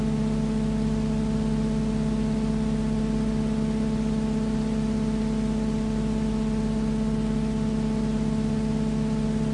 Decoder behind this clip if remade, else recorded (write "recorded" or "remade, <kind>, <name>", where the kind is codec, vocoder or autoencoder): recorded